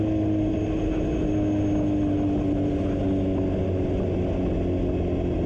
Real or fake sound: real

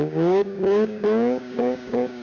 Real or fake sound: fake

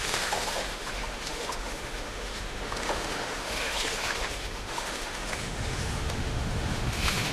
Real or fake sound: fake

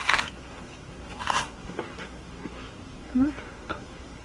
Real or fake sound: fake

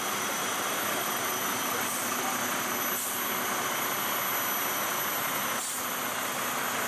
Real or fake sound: real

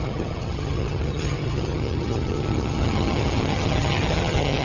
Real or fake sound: fake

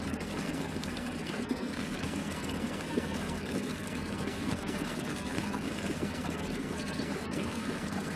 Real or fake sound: fake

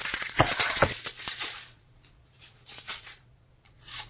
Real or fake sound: fake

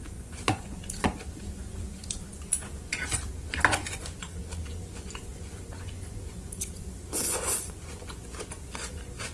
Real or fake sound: fake